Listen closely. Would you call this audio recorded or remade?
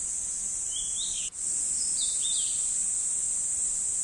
recorded